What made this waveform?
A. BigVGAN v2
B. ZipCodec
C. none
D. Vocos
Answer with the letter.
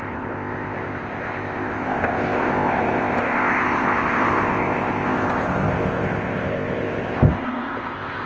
B